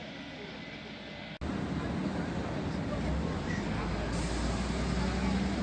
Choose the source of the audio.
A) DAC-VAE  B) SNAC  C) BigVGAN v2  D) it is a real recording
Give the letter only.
D